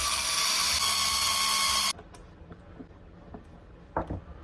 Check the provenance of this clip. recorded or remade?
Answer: recorded